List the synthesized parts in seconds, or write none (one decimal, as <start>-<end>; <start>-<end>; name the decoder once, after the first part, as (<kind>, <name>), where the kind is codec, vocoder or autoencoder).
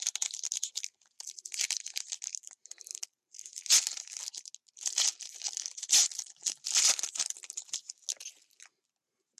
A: none